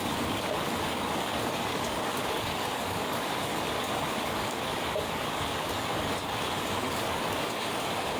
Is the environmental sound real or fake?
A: fake